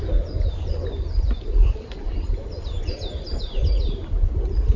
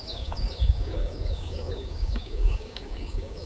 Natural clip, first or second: first